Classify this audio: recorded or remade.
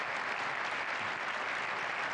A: recorded